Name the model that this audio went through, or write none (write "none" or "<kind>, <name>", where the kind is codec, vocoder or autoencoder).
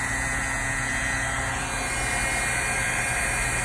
none